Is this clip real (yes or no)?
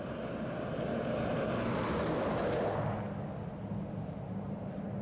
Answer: yes